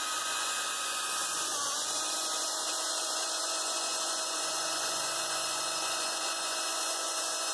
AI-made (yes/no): yes